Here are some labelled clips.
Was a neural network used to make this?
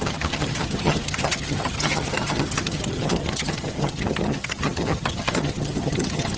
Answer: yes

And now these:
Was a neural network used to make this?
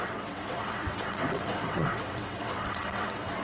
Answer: yes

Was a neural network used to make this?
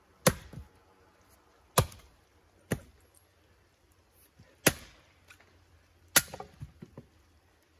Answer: no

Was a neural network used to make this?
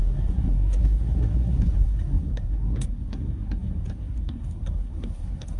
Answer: yes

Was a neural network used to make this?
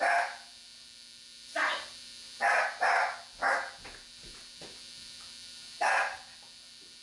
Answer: yes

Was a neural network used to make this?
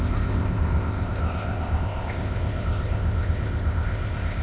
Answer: yes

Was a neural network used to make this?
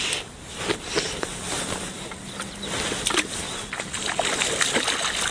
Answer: no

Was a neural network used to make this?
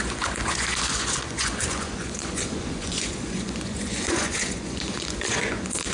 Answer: yes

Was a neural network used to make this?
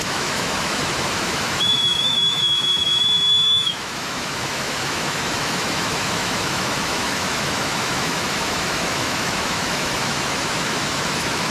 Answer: yes